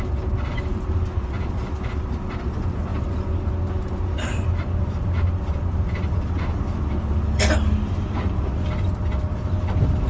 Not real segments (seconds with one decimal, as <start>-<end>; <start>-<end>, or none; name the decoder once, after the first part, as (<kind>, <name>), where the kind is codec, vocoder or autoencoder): none